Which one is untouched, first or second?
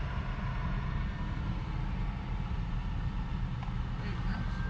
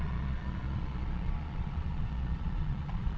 first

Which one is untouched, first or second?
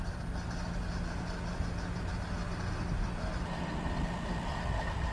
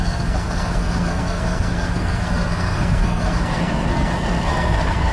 first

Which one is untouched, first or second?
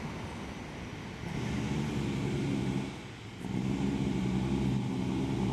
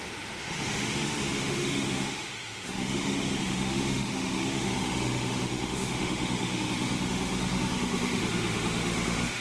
first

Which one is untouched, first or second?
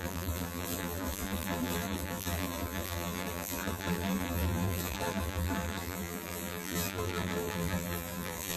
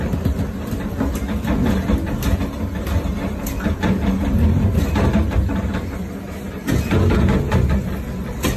second